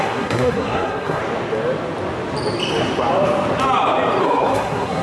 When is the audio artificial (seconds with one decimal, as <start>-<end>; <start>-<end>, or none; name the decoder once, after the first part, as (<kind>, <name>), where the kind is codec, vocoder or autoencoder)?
0.0-1.2 (codec, SNAC); 4.2-5.0